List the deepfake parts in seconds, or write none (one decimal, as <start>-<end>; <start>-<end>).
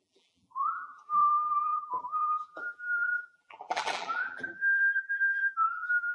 0.0-6.1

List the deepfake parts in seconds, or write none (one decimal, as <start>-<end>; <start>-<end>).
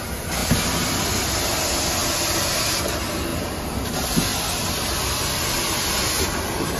3.3-3.9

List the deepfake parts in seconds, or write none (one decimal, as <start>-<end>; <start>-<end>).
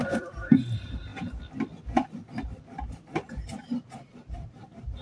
0.0-1.1; 1.8-5.0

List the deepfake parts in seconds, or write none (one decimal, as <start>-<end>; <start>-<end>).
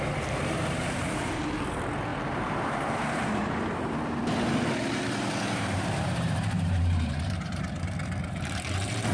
0.0-9.1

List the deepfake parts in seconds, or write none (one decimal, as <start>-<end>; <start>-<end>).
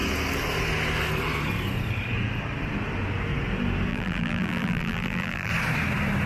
3.9-5.5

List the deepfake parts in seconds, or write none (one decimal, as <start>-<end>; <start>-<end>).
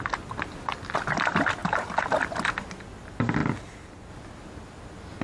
1.6-2.3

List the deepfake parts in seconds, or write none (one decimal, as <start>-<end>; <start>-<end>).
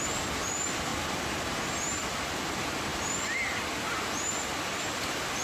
none